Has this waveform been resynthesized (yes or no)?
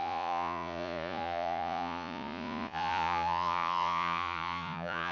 yes